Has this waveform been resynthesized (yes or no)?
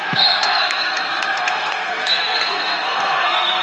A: yes